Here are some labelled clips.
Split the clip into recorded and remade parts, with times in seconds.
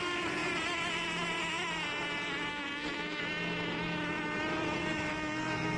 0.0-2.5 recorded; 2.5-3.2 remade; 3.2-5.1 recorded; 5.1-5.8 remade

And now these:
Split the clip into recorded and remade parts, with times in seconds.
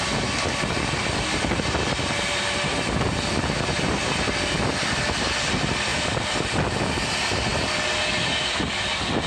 0.0-9.3 recorded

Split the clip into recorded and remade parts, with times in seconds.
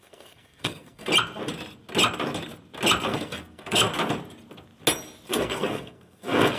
0.0-1.1 remade; 1.1-3.0 recorded; 3.0-3.9 remade; 3.9-5.3 recorded; 5.3-6.6 remade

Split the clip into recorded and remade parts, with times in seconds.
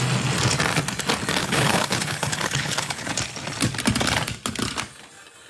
0.0-1.4 recorded; 1.4-3.1 remade; 3.1-5.5 recorded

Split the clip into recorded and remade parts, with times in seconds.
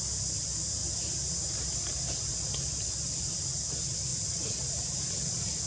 0.0-5.7 recorded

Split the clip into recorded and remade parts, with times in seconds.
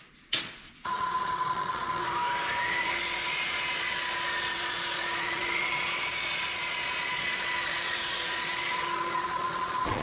0.0-2.0 remade; 2.0-2.8 recorded; 2.8-10.0 remade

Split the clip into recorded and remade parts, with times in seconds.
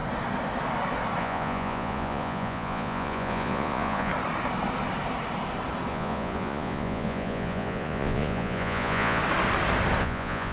0.0-1.2 recorded; 1.2-4.1 remade; 4.1-5.9 recorded; 5.9-9.2 remade; 9.2-10.0 recorded; 10.0-10.5 remade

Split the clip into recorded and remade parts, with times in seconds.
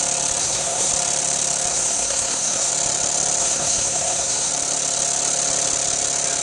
0.0-0.4 recorded; 0.4-0.9 remade; 0.9-1.7 recorded; 1.7-2.7 remade; 2.7-3.4 recorded; 3.4-4.5 remade; 4.5-6.4 recorded